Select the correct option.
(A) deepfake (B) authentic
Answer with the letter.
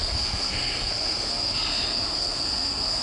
A